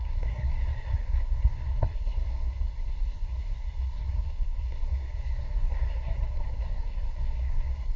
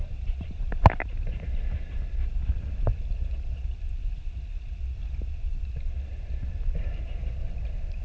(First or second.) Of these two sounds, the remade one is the first